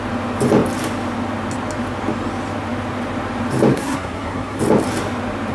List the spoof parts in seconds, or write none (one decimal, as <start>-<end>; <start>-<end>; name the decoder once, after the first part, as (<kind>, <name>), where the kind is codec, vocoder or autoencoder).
3.7-4.6 (codec, SNAC)